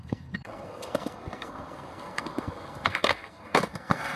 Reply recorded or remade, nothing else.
remade